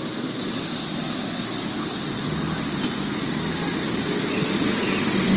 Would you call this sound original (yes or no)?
yes